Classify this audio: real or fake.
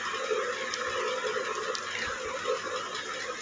real